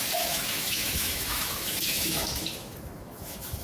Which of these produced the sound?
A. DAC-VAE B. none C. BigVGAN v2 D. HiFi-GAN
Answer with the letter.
A